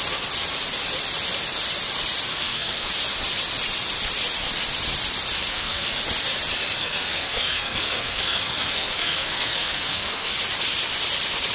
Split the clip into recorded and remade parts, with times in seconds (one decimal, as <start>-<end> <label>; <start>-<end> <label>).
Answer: 0.0-2.3 recorded; 2.3-2.9 remade; 2.9-5.5 recorded; 5.5-6.0 remade; 6.0-6.8 recorded; 6.8-10.3 remade; 10.3-11.5 recorded